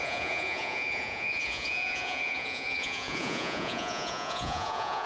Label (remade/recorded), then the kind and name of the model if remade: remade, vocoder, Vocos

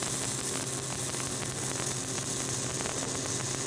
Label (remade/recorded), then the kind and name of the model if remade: recorded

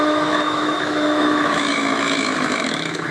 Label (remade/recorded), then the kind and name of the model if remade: remade, autoencoder, DAC-VAE